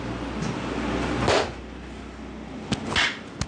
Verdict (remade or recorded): recorded